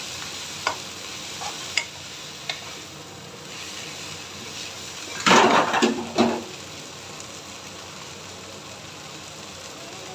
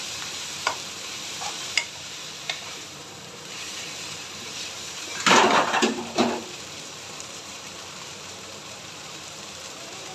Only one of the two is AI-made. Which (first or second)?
second